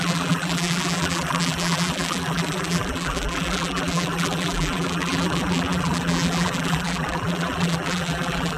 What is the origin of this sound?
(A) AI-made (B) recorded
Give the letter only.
A